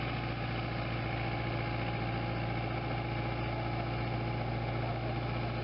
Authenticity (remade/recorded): recorded